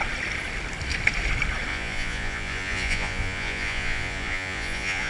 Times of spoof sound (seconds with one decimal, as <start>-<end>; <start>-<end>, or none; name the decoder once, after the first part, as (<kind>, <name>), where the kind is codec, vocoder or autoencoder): 1.7-5.1 (vocoder, Vocos)